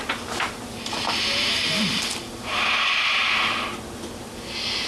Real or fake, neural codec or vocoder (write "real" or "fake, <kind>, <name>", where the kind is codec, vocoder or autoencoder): real